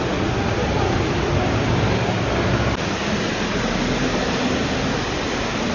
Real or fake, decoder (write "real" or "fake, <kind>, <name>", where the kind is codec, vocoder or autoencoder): real